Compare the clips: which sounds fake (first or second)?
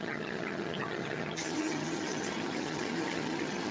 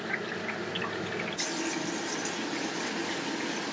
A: first